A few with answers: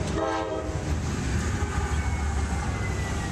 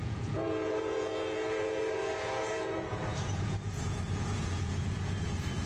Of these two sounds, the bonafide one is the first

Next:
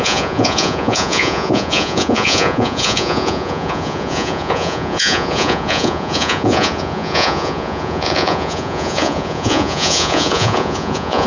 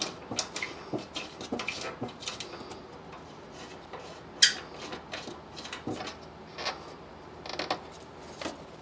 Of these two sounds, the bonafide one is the second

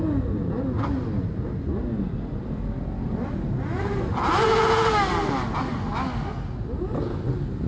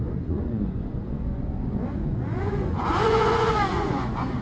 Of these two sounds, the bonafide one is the first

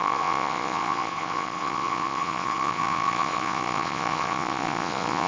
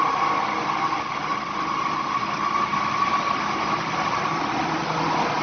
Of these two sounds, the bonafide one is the second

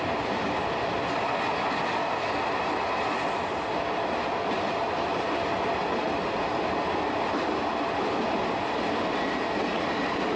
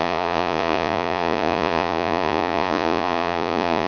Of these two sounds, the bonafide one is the first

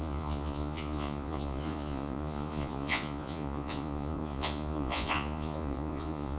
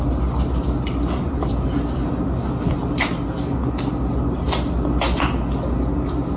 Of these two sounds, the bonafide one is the second